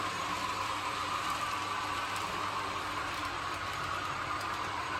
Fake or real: fake